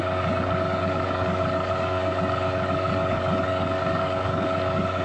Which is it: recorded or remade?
remade